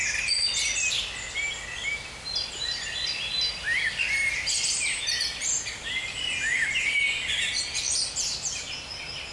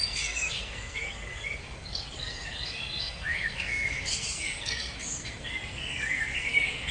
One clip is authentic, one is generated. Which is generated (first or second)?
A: second